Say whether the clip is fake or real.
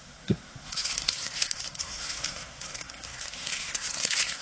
fake